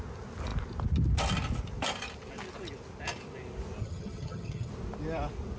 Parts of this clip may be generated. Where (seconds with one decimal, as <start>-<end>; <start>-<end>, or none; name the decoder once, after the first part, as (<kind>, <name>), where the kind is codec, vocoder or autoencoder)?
3.8-4.7 (vocoder, HiFi-GAN)